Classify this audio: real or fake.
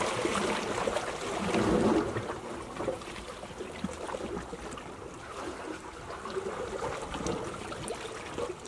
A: real